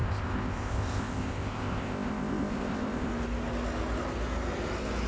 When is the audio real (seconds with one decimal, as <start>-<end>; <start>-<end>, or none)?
3.1-5.1